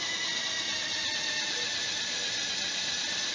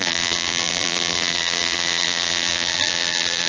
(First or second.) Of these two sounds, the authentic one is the first